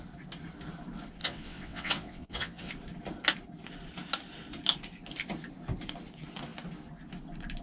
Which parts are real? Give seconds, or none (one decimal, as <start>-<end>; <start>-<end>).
0.0-1.2; 2.7-7.6